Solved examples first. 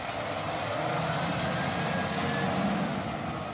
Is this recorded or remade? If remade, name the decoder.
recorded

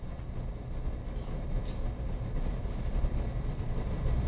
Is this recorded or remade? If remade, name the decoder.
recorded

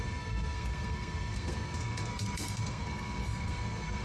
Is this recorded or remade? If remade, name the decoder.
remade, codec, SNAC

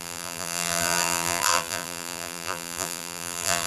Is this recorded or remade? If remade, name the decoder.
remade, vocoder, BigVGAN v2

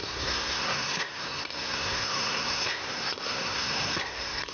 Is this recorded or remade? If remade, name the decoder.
remade, codec, SNAC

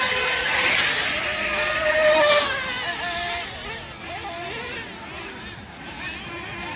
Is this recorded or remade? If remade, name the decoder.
recorded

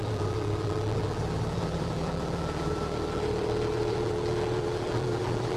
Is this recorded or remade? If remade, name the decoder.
remade, vocoder, BigVGAN v2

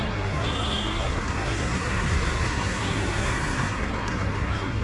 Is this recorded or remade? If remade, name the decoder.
remade, codec, SNAC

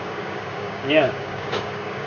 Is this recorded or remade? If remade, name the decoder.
remade, codec, DAC